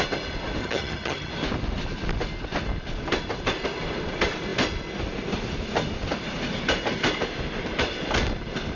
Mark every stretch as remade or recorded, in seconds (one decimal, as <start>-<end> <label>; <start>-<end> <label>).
0.0-0.6 recorded; 0.6-1.3 remade; 1.3-8.8 recorded